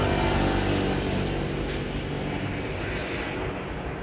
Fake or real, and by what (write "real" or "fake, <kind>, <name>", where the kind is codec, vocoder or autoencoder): real